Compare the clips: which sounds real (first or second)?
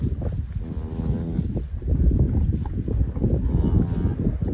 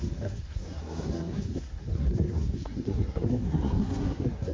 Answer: first